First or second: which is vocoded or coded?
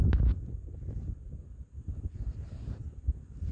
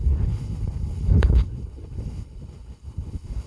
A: second